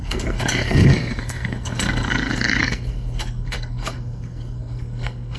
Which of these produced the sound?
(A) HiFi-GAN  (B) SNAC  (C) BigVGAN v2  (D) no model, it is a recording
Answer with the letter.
B